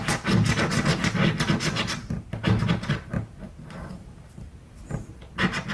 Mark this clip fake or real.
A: real